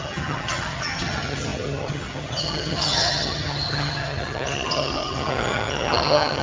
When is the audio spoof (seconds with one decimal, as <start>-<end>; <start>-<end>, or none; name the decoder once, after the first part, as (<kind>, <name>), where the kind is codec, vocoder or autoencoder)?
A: 0.0-6.4 (vocoder, HiFi-GAN)